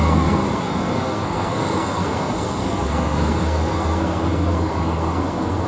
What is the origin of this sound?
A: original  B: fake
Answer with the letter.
B